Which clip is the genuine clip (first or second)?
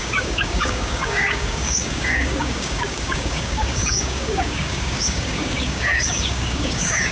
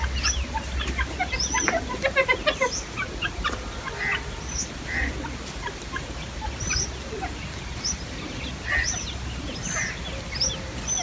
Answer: second